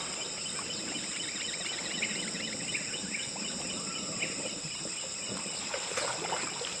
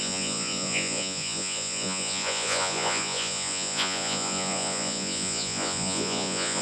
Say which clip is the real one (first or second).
first